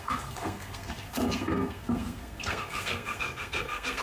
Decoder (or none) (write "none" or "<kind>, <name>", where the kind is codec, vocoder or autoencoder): codec, SNAC